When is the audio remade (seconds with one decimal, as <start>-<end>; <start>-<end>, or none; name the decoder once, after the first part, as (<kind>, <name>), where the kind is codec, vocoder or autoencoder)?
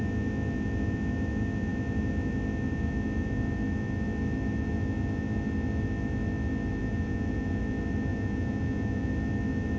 6.8-7.6 (vocoder, Vocos); 8.1-9.1